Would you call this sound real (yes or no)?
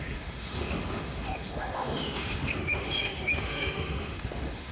no